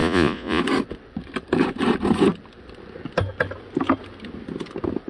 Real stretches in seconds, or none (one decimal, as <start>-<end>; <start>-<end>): 0.6-5.1